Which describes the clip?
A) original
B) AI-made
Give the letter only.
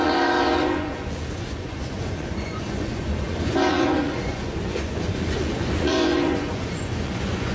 B